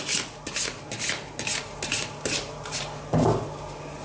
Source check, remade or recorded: recorded